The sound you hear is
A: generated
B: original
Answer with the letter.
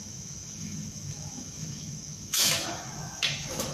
A